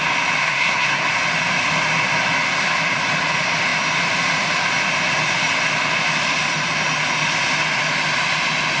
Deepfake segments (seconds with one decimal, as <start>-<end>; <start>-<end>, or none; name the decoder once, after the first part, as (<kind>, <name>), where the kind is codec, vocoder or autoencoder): 0.4-1.1 (codec, SNAC)